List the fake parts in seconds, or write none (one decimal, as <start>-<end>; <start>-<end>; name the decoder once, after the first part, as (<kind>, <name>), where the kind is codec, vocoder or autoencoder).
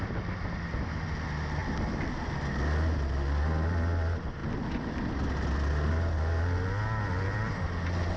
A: none